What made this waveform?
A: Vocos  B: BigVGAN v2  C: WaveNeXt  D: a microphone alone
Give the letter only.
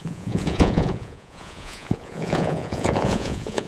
A